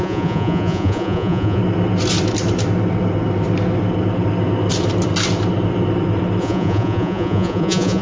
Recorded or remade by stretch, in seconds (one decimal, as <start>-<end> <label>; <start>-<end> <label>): 0.0-1.6 remade; 1.6-6.4 recorded; 6.4-8.0 remade